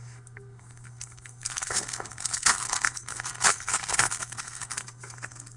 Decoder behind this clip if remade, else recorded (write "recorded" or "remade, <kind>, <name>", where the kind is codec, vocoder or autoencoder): remade, codec, SNAC